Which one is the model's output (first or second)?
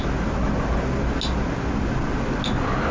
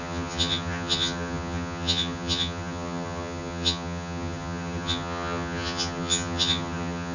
second